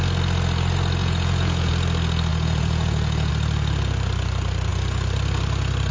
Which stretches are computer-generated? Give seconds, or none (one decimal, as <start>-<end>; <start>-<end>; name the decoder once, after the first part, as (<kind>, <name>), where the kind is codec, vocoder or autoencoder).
1.0-1.7 (vocoder, Vocos); 2.3-3.3